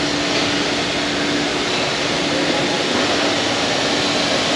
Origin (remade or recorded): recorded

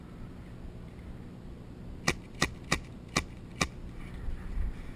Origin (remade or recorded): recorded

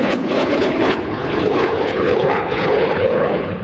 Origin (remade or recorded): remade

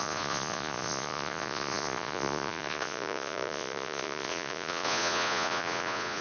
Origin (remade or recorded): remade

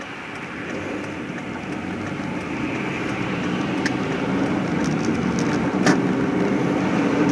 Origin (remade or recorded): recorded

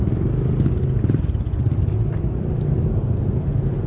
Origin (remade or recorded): recorded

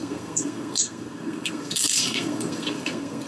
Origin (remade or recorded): remade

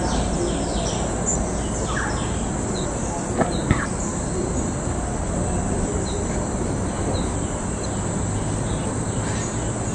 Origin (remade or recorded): recorded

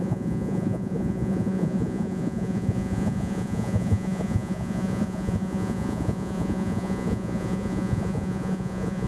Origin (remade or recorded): remade